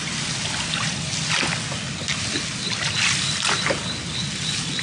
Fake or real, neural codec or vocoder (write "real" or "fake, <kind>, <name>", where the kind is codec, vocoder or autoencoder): real